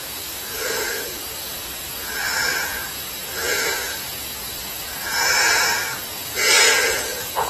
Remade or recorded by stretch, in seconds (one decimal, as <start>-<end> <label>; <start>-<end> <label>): 0.0-7.5 remade